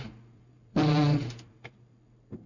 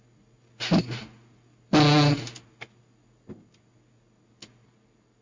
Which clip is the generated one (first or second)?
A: first